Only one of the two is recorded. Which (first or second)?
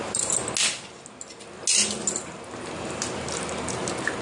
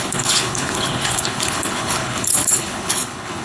first